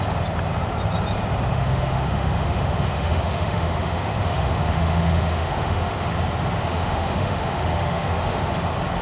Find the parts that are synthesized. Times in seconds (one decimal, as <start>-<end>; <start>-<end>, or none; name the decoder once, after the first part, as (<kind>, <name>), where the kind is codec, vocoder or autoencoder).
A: 1.5-6.1 (autoencoder, DAC-VAE); 6.7-8.5

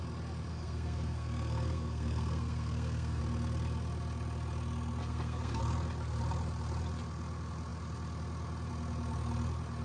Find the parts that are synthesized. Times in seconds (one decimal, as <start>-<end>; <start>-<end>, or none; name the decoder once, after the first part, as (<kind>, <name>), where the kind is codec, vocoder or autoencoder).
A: 0.5-3.2 (codec, SNAC); 5.0-5.6

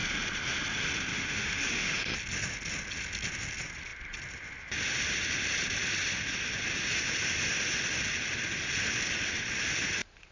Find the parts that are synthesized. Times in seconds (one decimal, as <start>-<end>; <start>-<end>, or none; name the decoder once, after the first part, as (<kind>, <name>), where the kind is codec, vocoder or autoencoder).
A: 1.1-1.9 (autoencoder, DAC-VAE)

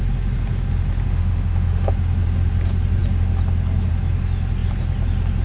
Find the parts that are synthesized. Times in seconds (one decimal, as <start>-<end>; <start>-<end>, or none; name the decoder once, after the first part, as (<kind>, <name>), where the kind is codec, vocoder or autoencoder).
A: 1.1-1.9 (autoencoder, DAC-VAE)

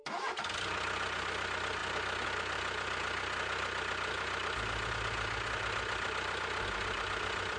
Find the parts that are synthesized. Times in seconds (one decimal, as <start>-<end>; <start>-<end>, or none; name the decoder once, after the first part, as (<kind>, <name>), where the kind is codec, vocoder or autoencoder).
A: none

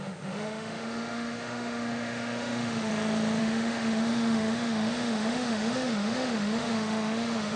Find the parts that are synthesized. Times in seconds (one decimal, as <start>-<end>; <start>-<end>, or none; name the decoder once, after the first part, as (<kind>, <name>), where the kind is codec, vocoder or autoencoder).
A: 0.0-2.9 (autoencoder, DAC-VAE); 3.4-7.6

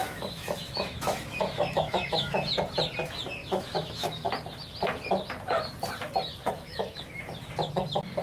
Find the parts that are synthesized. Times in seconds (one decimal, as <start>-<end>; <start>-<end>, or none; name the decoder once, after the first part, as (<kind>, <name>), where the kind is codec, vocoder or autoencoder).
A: 0.0-2.5 (autoencoder, DAC-VAE); 3.4-4.3; 6.4-7.2